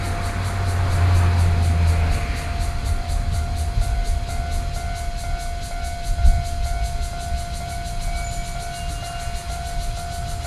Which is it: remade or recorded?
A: recorded